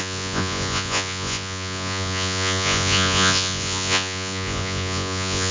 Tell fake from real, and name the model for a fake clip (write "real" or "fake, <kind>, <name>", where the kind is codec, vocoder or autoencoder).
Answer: fake, vocoder, Vocos